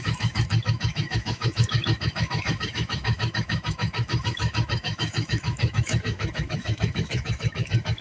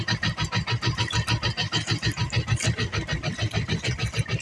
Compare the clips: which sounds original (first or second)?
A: second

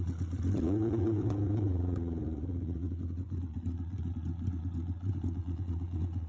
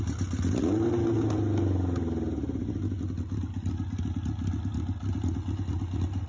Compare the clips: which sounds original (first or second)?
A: second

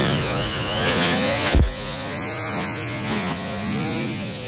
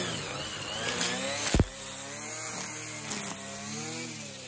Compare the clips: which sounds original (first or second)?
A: second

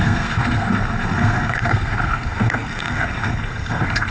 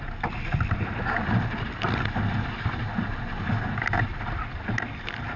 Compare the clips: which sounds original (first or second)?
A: second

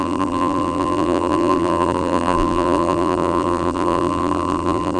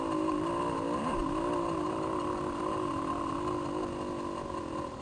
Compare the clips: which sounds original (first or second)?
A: second